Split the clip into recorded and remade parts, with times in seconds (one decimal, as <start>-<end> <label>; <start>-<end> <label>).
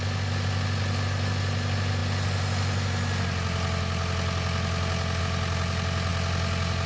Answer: 0.0-6.9 recorded